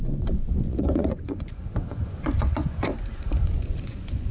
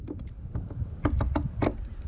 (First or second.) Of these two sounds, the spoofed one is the first